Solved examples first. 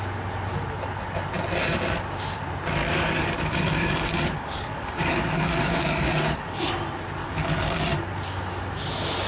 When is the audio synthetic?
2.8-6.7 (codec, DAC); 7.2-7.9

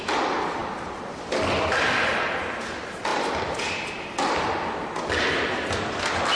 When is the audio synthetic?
none

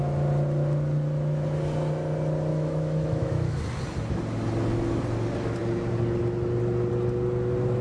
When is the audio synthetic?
2.5-3.6 (autoencoder, DAC-VAE)